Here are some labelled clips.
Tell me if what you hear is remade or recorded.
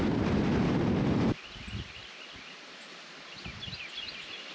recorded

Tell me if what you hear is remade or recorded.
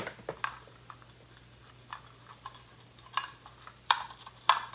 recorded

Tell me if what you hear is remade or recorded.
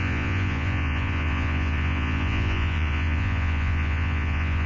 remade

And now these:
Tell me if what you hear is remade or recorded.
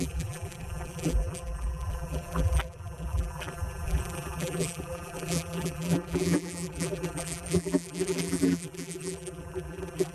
remade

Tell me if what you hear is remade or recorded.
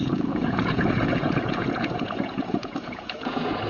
remade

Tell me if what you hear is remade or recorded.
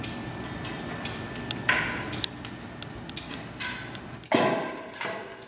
recorded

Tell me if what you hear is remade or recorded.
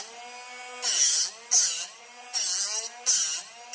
recorded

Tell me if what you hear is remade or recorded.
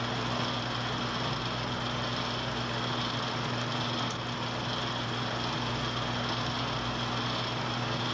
recorded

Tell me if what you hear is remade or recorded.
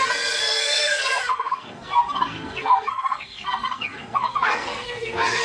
remade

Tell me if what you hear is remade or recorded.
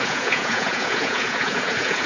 remade